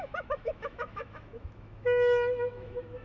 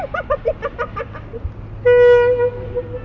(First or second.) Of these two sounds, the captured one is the second